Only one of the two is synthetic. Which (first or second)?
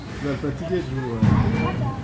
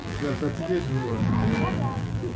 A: second